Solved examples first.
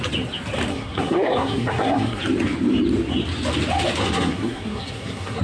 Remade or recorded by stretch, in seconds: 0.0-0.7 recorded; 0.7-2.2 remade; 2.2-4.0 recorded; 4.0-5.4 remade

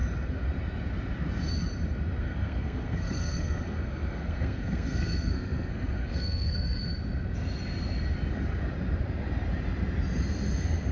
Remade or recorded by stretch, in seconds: 0.0-2.2 recorded; 2.2-6.8 remade; 6.8-10.9 recorded